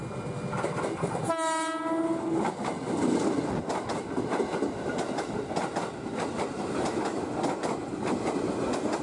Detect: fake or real real